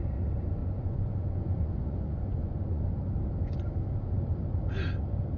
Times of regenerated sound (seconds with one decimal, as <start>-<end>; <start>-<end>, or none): 0.6-2.8